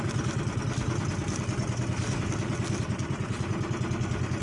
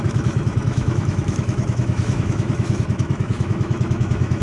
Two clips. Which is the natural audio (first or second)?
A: first